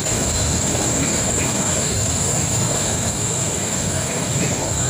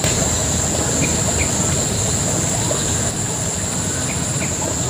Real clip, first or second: second